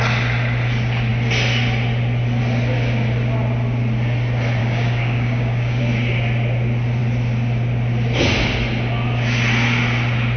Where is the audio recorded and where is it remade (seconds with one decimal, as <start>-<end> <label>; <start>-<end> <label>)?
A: 0.0-4.6 recorded; 4.6-5.8 remade; 5.8-10.4 recorded